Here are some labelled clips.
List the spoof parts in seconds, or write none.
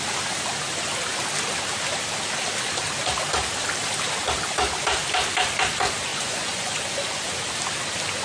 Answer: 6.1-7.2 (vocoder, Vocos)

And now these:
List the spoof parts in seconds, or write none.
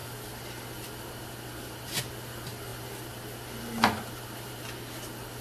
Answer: none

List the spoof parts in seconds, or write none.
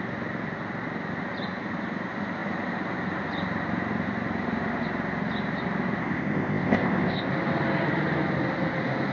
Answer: 6.0-7.3 (codec, ZipCodec)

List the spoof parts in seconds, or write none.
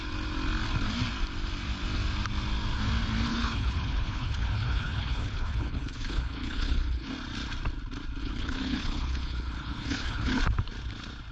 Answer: 3.3-7.1 (codec, HILCodec); 8.2-10.4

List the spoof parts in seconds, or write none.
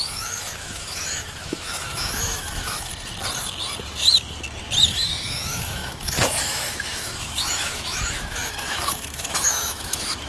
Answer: 0.0-2.9 (autoencoder, DAC-VAE); 4.9-10.3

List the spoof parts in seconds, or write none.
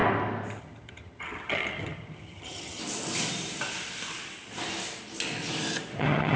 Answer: 0.6-2.8 (vocoder, HiFi-GAN); 6.0-6.4